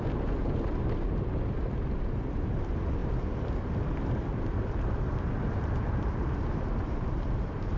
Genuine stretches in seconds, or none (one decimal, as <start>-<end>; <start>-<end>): none